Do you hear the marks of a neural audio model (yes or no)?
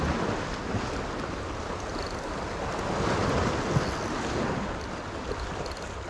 no